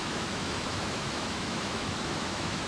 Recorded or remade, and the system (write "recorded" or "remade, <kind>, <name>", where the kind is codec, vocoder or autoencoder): remade, autoencoder, DAC-VAE